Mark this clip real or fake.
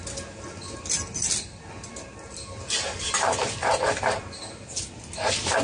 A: real